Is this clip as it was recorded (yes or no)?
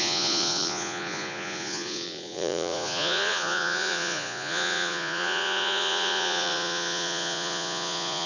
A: no